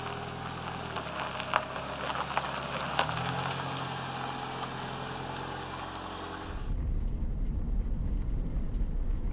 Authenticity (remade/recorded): recorded